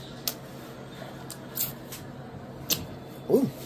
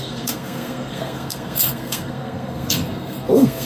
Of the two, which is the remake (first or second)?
second